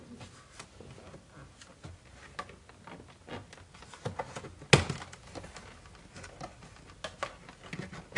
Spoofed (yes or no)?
no